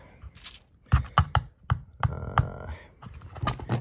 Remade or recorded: recorded